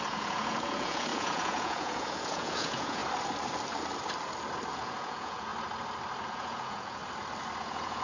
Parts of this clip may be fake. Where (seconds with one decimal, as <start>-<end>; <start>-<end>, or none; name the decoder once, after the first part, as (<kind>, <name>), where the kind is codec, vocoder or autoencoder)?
0.0-3.0 (vocoder, Vocos); 4.7-5.5; 6.3-7.0; 7.6-8.0

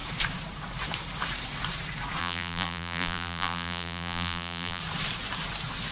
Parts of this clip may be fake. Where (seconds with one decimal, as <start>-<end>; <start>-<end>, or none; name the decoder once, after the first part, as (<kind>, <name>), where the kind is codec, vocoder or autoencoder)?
2.2-4.8 (vocoder, BigVGAN v2)

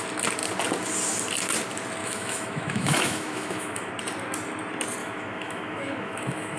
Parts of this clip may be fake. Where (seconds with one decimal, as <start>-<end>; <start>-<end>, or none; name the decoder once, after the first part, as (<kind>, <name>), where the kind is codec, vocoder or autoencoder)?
2.0-3.9 (autoencoder, DAC-VAE); 5.0-6.6

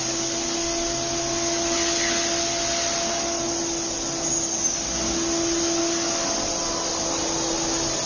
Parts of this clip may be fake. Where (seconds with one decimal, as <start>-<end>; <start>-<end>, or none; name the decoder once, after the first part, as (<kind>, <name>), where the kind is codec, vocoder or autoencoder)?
none